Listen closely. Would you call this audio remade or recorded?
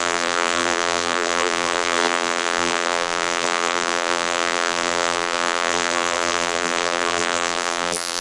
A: remade